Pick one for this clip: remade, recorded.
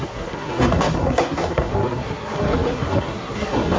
remade